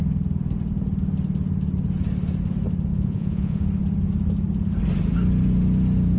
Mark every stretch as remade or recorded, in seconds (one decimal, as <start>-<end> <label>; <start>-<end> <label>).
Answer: 0.0-2.9 recorded; 2.9-3.6 remade; 3.6-6.2 recorded